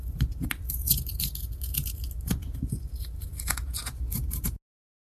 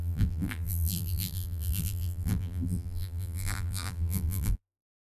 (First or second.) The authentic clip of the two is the first